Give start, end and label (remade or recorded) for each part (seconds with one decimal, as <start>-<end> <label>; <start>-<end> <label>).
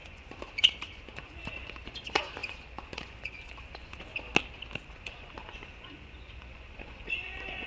0.0-4.1 remade; 4.1-4.8 recorded; 4.8-7.7 remade